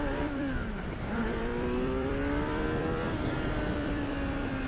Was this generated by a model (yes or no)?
yes